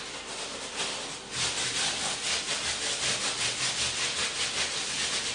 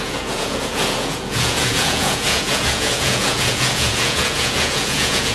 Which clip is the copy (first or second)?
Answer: second